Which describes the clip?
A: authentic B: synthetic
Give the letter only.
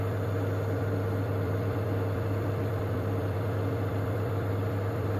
B